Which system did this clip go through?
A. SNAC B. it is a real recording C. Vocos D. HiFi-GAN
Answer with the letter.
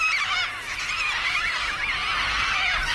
B